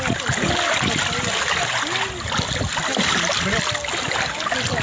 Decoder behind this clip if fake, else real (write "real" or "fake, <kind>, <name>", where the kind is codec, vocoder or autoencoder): real